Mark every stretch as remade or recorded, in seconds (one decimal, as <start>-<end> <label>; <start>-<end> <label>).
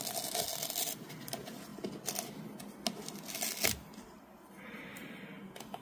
0.0-5.8 recorded